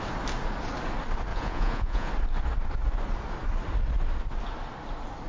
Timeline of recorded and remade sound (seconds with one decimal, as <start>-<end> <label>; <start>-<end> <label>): 0.0-1.3 recorded; 1.3-2.1 remade; 2.1-5.3 recorded